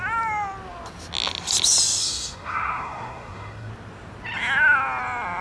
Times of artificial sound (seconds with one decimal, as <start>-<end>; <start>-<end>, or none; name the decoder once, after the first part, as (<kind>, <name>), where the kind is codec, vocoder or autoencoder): 2.0-3.7 (codec, SNAC)